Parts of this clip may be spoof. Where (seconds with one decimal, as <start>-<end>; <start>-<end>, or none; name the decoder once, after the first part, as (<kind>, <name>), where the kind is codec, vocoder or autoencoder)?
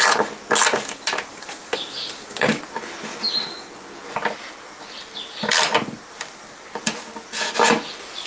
1.3-2.6 (codec, DAC)